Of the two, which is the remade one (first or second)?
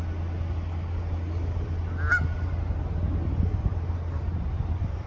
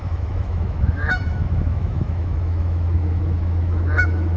second